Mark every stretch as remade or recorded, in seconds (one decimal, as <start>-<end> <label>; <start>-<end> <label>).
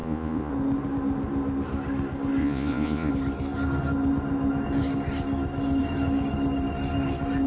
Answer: 0.0-0.5 remade; 0.5-2.4 recorded; 2.4-3.1 remade; 3.1-7.5 recorded